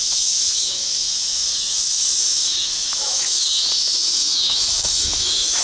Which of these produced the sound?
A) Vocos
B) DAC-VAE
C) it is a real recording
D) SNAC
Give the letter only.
B